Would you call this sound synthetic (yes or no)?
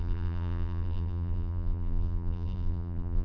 yes